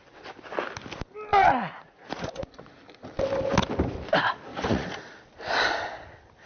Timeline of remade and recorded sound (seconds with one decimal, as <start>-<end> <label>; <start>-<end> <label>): 0.0-1.3 recorded; 1.3-2.8 remade; 2.8-4.5 recorded; 4.5-5.0 remade; 5.0-6.5 recorded